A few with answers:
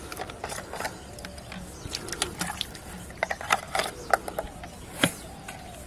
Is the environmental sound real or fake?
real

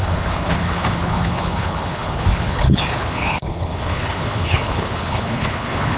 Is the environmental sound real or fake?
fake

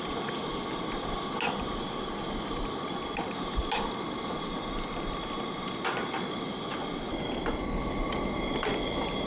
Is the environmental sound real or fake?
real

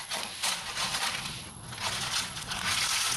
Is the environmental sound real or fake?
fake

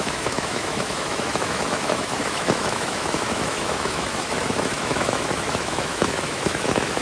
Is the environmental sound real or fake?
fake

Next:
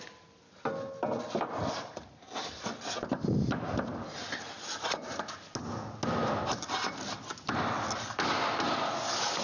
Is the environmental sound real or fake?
real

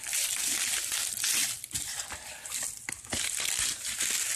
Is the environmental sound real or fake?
real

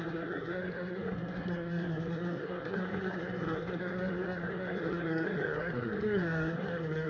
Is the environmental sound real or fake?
fake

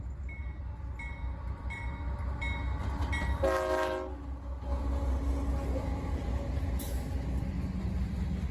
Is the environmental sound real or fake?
real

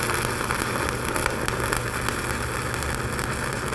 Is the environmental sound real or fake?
real